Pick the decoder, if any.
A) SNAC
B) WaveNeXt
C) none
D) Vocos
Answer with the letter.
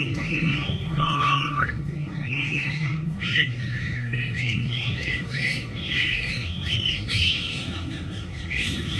A